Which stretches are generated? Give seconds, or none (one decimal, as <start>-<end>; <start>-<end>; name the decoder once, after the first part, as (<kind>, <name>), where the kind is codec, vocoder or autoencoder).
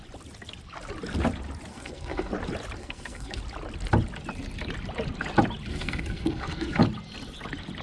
1.7-2.3 (codec, SNAC); 2.8-3.4; 5.7-6.8